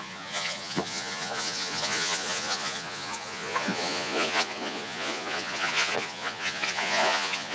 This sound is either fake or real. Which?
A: fake